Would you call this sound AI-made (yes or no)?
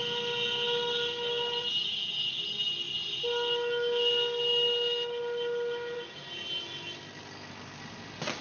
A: no